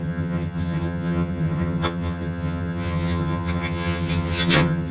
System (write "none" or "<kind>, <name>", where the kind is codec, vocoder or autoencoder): vocoder, HiFi-GAN